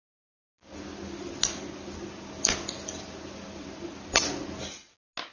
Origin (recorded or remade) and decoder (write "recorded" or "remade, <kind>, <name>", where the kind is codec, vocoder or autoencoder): recorded